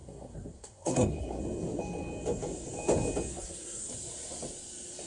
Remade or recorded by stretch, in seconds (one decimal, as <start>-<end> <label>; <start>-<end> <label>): 0.0-1.4 remade; 1.4-3.3 recorded; 3.3-3.9 remade; 3.9-5.1 recorded